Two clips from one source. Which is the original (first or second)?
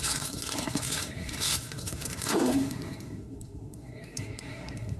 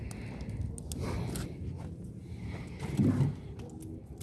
second